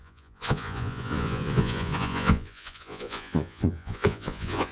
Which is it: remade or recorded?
remade